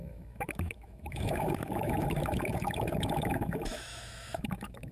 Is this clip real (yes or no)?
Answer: no